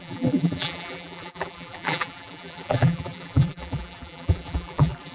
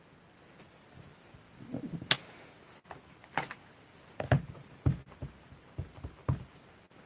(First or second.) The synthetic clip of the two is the first